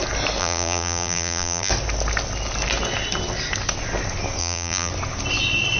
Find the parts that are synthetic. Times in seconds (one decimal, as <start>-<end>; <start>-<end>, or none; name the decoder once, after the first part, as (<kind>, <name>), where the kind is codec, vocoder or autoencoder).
0.4-1.7 (vocoder, BigVGAN v2); 4.4-4.9